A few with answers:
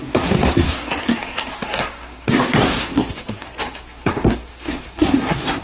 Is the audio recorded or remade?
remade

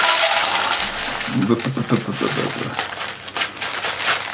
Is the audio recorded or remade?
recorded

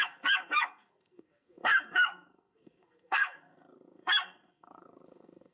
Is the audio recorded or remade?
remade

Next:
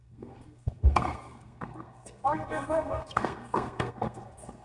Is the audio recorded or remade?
remade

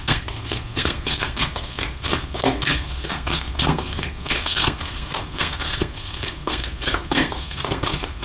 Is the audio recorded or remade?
remade